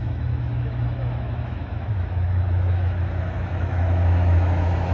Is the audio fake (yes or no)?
yes